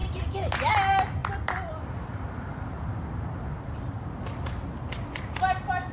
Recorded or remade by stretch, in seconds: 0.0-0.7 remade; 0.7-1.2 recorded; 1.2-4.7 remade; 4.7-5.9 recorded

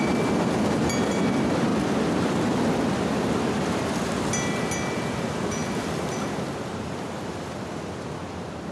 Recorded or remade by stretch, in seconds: 0.0-8.7 recorded

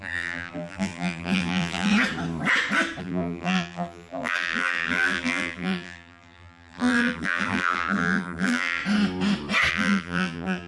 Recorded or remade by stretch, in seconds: 0.0-1.9 remade; 1.9-3.0 recorded; 3.0-8.8 remade; 8.8-9.7 recorded; 9.7-10.7 remade

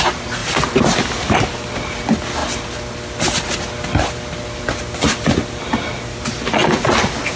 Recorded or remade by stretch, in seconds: 0.0-0.4 recorded; 0.4-1.4 remade; 1.4-7.4 recorded

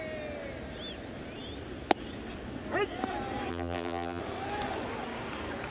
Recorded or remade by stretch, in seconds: 0.0-3.5 recorded; 3.5-4.2 remade; 4.2-5.7 recorded

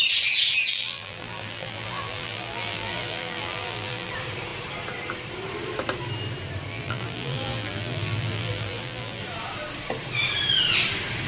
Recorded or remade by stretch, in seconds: 0.0-0.7 recorded; 0.7-4.1 remade; 4.1-6.7 recorded; 6.7-9.2 remade; 9.2-11.3 recorded

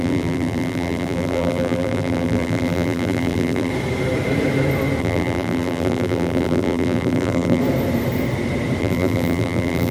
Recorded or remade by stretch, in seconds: 0.0-3.7 remade; 3.7-5.0 recorded; 5.0-7.6 remade; 7.6-8.8 recorded; 8.8-9.9 remade